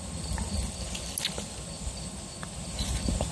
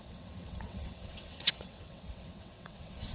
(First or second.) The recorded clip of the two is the first